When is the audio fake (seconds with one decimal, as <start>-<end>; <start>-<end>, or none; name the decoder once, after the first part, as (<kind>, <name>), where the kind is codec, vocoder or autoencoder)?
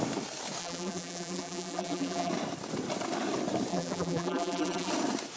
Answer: 0.6-2.3 (vocoder, BigVGAN v2); 3.7-4.9